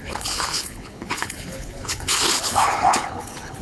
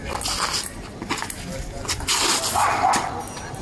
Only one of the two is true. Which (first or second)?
second